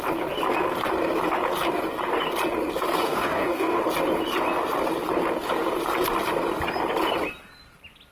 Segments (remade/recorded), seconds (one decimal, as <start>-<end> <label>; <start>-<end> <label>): 0.0-3.0 recorded; 3.0-3.8 remade; 3.8-8.1 recorded